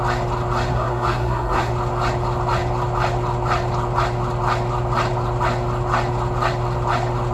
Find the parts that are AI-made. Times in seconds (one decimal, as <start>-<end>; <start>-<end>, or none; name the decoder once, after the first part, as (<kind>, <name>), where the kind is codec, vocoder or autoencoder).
0.7-1.7 (codec, SNAC)